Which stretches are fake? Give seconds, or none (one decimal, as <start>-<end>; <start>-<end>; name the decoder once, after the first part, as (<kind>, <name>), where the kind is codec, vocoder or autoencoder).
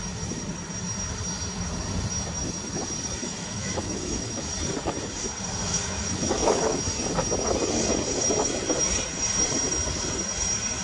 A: 3.2-4.5 (autoencoder, DAC-VAE); 5.6-6.8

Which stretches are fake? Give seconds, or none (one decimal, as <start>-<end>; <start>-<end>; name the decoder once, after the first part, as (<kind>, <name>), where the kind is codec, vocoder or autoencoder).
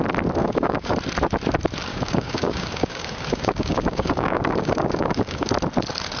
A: 0.4-0.9 (codec, DAC); 1.9-5.5